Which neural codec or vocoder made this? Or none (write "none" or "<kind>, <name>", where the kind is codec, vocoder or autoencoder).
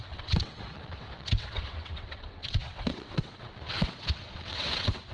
vocoder, WaveNeXt